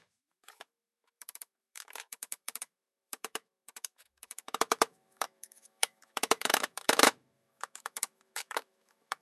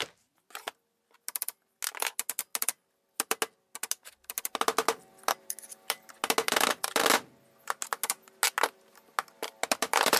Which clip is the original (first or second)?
second